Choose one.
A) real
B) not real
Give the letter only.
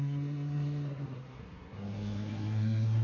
B